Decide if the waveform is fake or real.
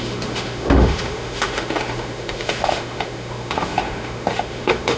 fake